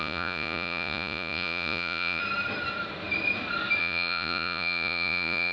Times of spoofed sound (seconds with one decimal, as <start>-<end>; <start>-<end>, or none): 0.0-2.2; 3.8-5.5